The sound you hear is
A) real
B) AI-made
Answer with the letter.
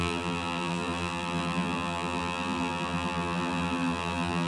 B